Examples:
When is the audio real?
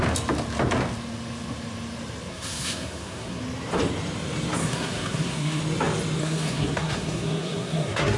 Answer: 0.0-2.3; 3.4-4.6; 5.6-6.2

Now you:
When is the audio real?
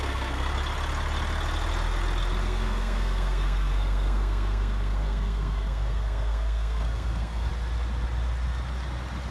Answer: 0.5-2.4; 7.5-9.3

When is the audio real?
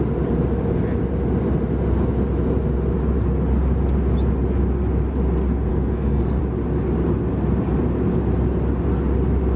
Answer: 0.0-5.7; 6.4-9.6